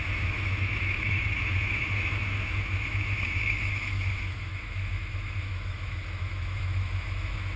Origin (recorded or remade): remade